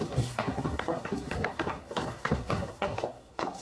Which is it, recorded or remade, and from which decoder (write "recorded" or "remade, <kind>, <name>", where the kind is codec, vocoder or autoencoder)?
remade, codec, SNAC